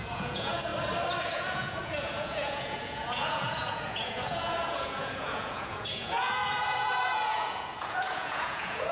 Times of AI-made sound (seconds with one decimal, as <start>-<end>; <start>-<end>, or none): 0.0-0.7; 1.2-8.9